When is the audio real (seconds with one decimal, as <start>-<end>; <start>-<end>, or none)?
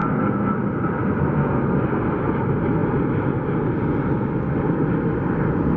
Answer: 0.0-5.8